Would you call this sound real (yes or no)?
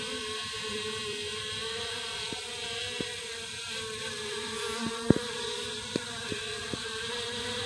no